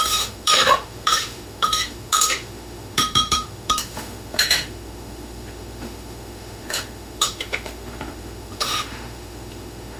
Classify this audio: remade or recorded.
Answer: remade